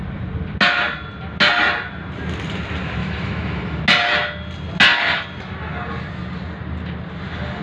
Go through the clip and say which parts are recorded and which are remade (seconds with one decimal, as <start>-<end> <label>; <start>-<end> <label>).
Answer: 0.0-3.0 recorded; 3.0-3.8 remade; 3.8-7.6 recorded